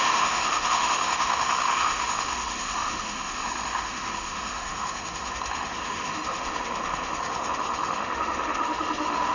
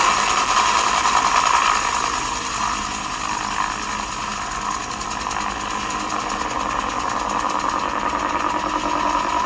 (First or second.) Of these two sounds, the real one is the second